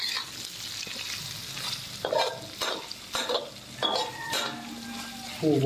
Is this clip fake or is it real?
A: real